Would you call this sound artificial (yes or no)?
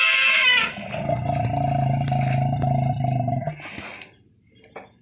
no